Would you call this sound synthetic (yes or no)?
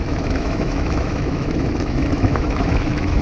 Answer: yes